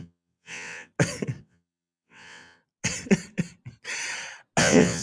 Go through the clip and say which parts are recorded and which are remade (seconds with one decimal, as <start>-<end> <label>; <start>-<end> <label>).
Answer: 0.0-0.9 remade; 0.9-1.4 recorded; 1.4-2.6 remade; 2.6-4.6 recorded; 4.6-5.0 remade